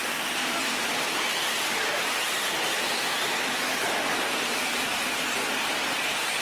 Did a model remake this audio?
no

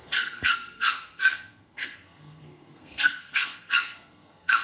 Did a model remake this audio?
yes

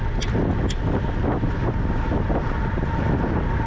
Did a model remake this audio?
no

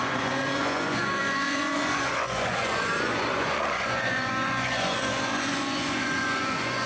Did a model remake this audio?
yes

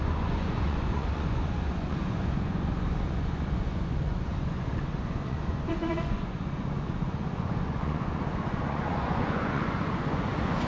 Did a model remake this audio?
yes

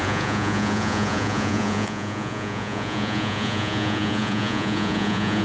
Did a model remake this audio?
yes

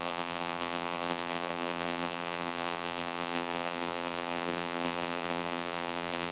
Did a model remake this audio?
yes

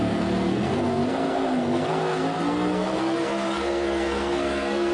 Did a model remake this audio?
yes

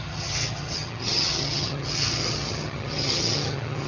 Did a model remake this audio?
yes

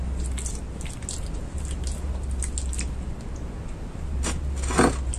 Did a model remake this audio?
no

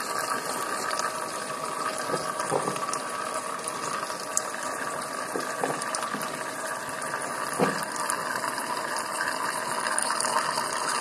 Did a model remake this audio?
no